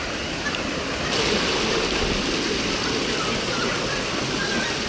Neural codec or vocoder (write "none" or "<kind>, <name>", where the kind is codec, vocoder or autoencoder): none